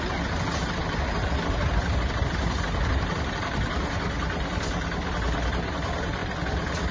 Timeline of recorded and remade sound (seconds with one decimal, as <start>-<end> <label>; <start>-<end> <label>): 0.0-6.9 recorded